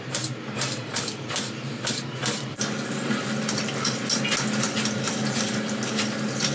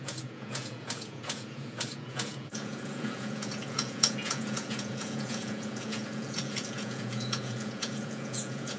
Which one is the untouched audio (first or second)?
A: first